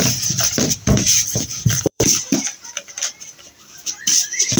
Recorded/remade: remade